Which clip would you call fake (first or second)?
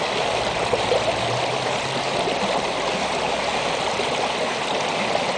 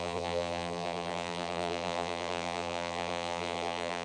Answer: second